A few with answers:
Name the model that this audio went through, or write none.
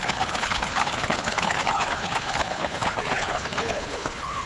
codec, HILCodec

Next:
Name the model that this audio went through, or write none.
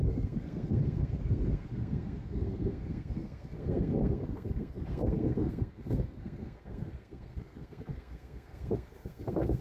codec, SNAC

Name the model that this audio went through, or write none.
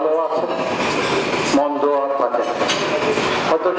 none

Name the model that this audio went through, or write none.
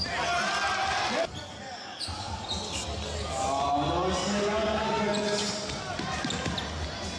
none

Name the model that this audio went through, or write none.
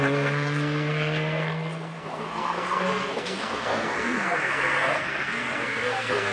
codec, SNAC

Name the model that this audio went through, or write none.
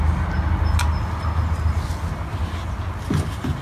none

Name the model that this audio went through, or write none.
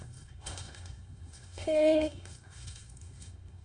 codec, SNAC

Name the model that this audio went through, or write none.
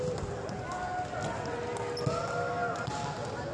none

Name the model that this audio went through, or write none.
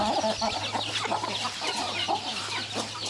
none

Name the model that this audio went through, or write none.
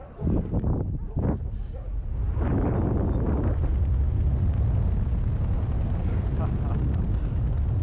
none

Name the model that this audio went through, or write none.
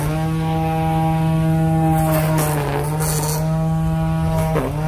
none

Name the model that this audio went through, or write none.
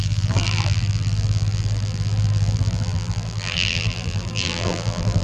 vocoder, BigVGAN v2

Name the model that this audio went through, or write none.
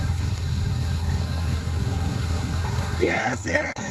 codec, SNAC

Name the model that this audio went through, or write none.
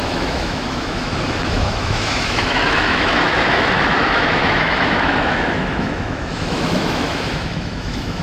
autoencoder, DAC-VAE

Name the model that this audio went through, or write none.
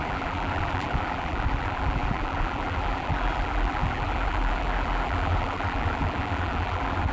vocoder, BigVGAN v2